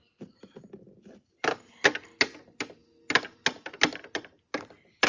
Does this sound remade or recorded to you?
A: recorded